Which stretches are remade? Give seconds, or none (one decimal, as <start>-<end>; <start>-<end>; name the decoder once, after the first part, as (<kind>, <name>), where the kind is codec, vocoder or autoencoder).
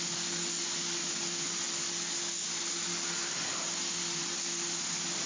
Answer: none